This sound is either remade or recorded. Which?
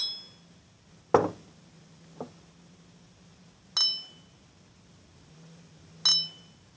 recorded